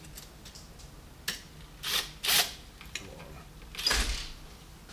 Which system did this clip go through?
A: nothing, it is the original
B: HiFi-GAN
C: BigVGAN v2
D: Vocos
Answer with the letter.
A